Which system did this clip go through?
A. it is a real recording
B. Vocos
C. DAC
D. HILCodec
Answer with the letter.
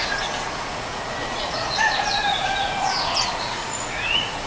B